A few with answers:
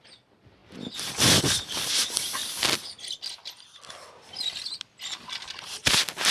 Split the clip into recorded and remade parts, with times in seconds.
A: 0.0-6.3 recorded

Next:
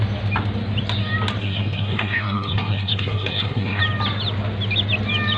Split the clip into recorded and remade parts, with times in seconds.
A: 0.0-1.4 recorded; 1.4-3.8 remade; 3.8-5.4 recorded